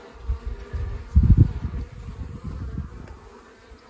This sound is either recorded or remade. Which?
recorded